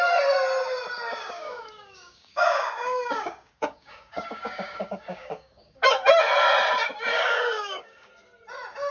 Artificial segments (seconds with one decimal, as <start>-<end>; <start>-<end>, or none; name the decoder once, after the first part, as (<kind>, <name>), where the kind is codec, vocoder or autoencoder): 1.1-5.9 (codec, DAC); 7.1-8.1